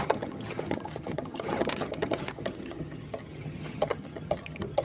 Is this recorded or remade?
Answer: remade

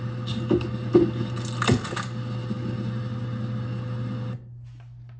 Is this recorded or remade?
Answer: recorded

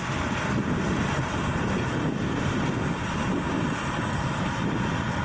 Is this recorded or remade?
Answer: recorded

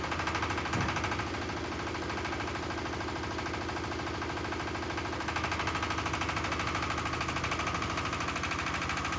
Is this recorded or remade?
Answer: recorded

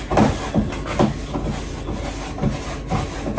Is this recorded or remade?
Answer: recorded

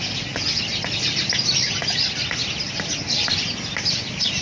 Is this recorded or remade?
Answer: recorded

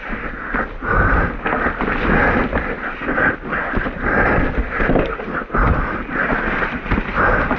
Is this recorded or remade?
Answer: recorded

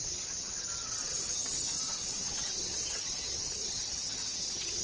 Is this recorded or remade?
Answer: remade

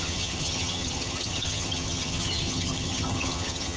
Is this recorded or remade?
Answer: remade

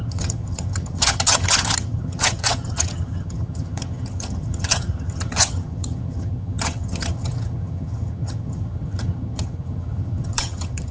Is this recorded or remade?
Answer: remade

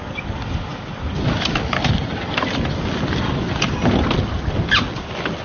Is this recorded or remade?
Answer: recorded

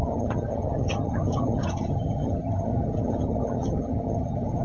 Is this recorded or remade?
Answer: remade